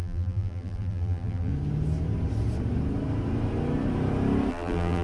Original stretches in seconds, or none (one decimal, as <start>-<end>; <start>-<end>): 1.5-4.5